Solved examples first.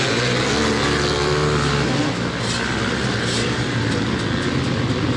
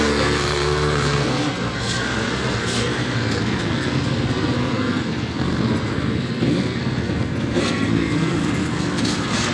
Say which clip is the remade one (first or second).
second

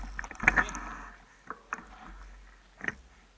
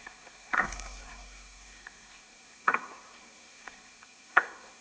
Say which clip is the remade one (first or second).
second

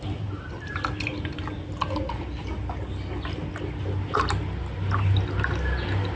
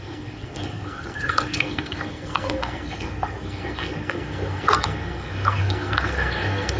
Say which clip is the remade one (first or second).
second